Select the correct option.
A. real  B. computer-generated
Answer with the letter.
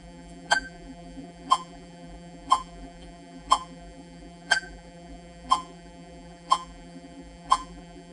B